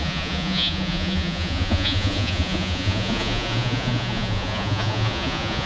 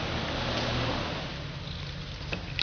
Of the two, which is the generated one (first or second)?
first